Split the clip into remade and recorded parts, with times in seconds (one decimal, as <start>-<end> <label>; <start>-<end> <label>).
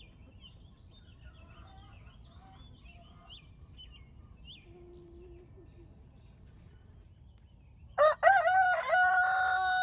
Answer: 0.0-9.8 recorded